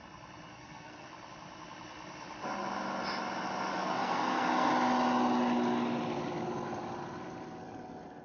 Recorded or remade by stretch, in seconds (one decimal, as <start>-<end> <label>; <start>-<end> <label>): 0.0-0.5 recorded; 0.5-1.1 remade; 1.1-3.8 recorded; 3.8-4.7 remade; 4.7-8.2 recorded